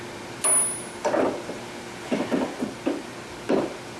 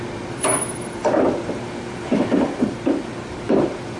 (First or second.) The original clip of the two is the first